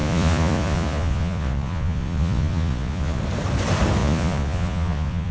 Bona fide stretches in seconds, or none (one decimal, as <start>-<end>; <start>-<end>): 3.2-4.0